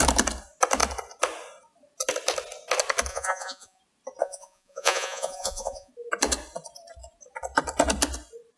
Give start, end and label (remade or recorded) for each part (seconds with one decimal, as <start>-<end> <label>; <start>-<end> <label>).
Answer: 0.0-3.1 recorded; 3.1-3.8 remade; 3.8-4.2 recorded; 4.2-5.9 remade; 5.9-8.6 recorded